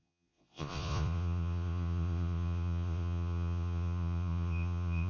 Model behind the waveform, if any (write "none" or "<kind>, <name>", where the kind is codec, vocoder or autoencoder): vocoder, Vocos